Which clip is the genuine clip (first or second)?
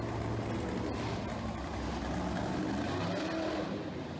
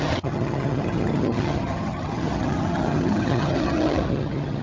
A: first